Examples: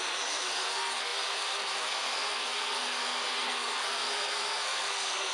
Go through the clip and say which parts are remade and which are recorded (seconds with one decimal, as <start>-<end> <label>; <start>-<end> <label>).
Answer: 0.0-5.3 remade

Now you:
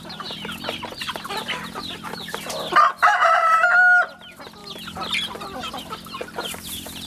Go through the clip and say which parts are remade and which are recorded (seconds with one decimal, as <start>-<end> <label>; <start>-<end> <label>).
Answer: 0.0-7.1 recorded

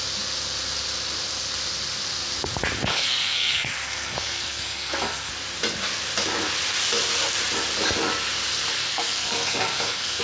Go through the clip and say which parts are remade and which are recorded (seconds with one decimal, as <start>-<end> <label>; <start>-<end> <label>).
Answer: 0.0-2.9 recorded; 2.9-5.3 remade; 5.3-8.9 recorded; 8.9-10.2 remade

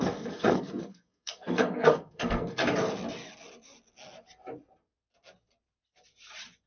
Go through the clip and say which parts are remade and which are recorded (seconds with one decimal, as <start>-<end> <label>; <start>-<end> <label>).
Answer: 0.0-2.6 remade; 2.6-6.7 recorded

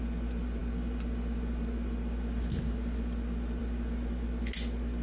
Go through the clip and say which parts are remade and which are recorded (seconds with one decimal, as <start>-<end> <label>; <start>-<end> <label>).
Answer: 0.0-5.0 recorded

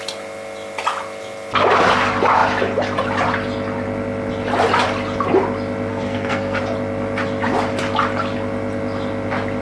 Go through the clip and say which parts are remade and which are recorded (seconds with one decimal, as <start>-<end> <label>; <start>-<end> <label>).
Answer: 0.0-5.9 recorded; 5.9-6.6 remade; 6.6-9.6 recorded